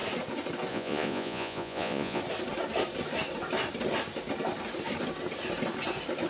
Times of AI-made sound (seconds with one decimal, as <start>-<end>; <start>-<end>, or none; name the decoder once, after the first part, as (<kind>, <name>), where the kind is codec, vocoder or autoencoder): 0.7-2.2 (vocoder, Vocos)